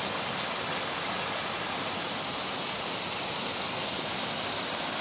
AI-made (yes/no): no